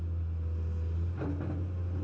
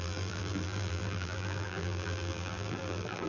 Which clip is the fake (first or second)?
second